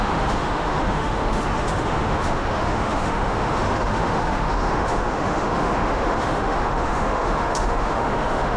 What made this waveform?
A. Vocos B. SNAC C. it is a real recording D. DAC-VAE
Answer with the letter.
D